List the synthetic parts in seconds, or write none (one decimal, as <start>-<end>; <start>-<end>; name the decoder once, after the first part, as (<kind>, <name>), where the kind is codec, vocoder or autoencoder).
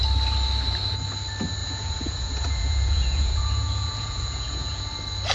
1.6-4.8 (vocoder, Vocos)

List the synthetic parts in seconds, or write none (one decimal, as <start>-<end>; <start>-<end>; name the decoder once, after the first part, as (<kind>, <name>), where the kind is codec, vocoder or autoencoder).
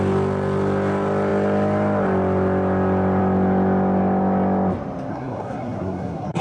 5.1-6.4 (codec, SNAC)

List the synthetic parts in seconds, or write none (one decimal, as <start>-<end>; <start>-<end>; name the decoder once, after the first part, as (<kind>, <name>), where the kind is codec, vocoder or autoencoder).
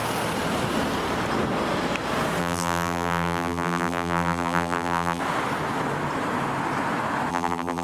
2.4-5.2 (vocoder, BigVGAN v2); 7.3-7.8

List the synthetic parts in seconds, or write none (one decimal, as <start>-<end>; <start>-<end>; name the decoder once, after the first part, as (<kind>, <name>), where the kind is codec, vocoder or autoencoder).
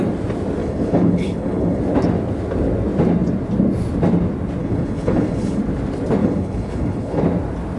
0.6-1.8 (codec, HILCodec); 4.6-5.6; 6.2-7.2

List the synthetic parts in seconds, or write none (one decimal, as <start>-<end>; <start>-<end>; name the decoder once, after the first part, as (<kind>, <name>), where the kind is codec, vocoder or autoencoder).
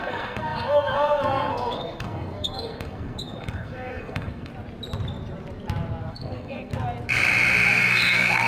0.0-4.5 (codec, SNAC); 6.1-6.7; 7.7-8.5